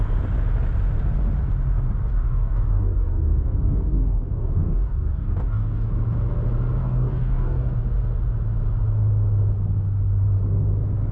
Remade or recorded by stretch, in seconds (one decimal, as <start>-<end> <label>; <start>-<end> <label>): 0.0-2.1 recorded; 2.1-5.9 remade; 5.9-6.8 recorded; 6.8-7.8 remade; 7.8-11.1 recorded